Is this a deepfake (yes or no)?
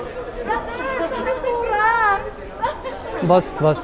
no